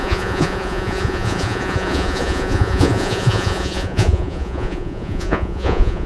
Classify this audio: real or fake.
fake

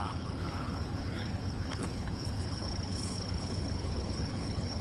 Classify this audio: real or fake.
fake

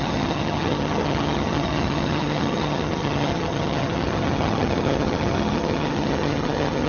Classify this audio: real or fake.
fake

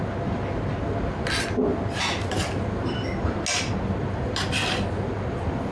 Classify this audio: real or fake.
real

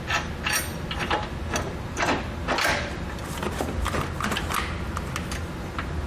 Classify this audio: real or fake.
real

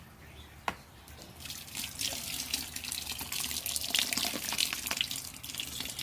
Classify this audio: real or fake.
real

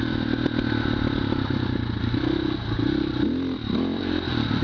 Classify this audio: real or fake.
real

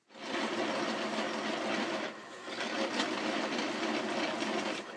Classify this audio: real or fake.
real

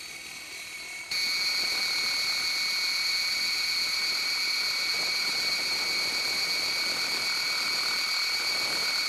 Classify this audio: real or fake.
fake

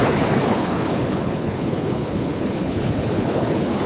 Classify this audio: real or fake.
fake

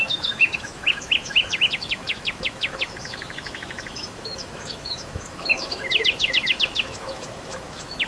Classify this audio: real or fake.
fake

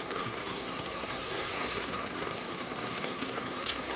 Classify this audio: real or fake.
fake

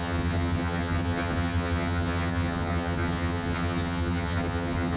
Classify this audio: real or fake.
fake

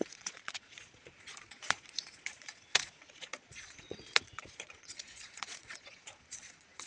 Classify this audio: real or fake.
fake